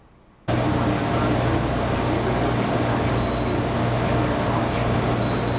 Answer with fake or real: real